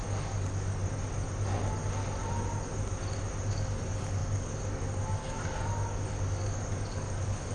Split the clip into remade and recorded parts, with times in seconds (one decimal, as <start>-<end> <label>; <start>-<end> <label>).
0.0-0.8 remade; 0.8-3.5 recorded; 3.5-7.5 remade